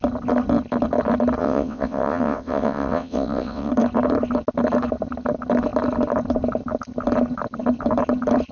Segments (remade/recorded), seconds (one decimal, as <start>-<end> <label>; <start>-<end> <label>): 0.0-1.4 recorded; 1.4-3.7 remade; 3.7-8.5 recorded